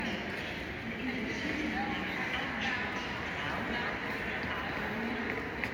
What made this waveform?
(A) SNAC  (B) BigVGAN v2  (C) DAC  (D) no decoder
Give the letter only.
D